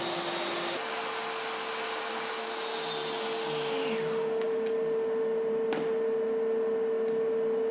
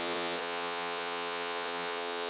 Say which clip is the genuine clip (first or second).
first